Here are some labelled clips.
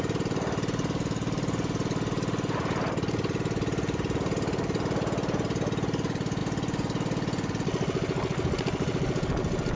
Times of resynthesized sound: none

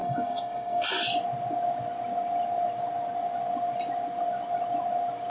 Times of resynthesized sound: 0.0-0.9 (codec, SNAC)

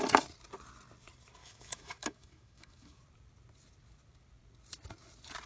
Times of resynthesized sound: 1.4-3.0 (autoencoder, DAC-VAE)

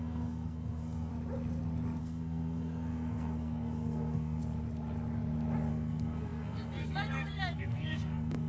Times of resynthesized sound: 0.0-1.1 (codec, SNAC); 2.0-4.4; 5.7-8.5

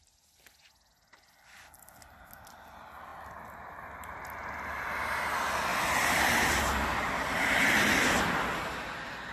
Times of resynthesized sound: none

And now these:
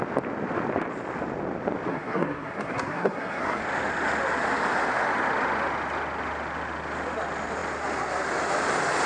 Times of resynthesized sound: 1.9-3.6 (codec, SNAC)

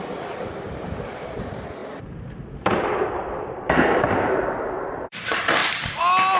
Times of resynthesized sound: 0.0-5.6 (vocoder, BigVGAN v2)